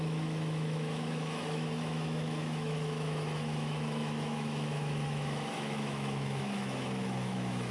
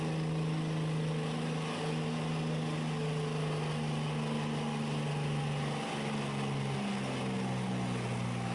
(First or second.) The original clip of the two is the second